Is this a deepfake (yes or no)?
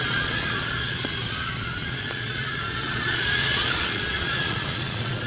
yes